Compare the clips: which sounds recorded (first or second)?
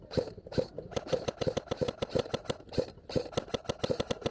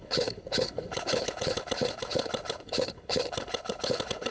first